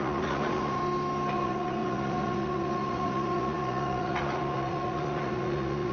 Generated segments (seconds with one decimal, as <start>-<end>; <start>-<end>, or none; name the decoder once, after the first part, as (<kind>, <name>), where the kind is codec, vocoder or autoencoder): 0.0-0.8 (vocoder, Vocos); 1.3-5.9